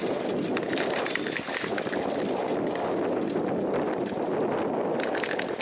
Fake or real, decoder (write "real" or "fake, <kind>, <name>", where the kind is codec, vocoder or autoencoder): real